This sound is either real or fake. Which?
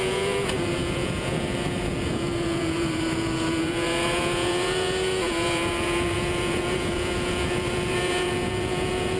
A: fake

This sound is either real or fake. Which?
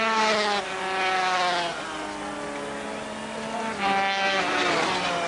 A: real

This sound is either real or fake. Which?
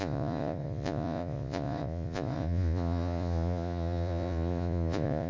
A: fake